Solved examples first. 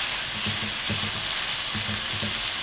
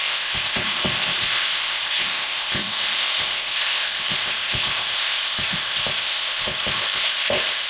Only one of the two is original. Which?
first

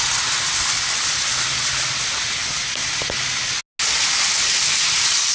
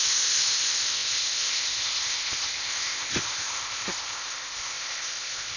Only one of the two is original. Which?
first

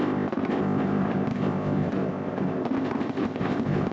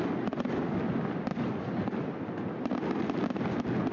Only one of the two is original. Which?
second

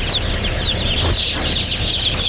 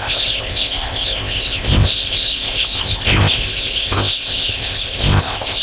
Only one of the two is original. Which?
first